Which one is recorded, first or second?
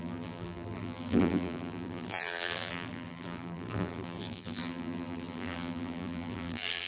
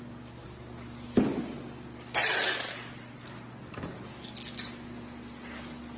second